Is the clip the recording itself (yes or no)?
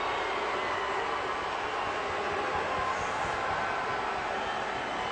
yes